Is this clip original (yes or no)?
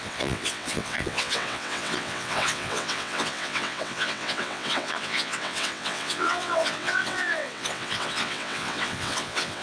no